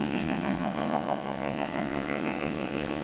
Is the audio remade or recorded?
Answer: remade